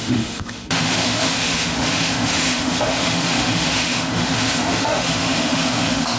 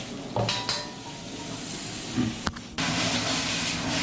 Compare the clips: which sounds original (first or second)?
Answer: second